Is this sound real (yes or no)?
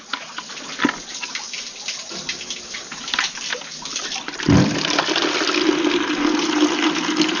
yes